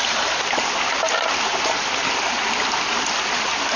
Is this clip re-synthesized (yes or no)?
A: no